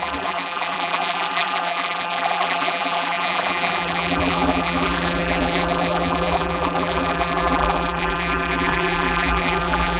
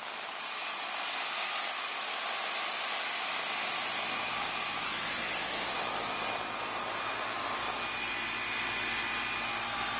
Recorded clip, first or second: second